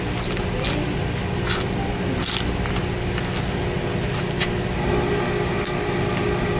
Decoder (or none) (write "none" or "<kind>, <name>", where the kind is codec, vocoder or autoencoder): none